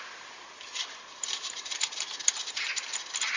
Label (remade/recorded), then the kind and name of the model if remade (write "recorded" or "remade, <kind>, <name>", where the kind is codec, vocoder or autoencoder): recorded